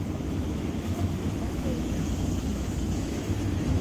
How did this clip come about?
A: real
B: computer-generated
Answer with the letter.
B